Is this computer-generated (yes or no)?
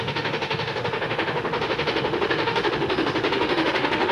yes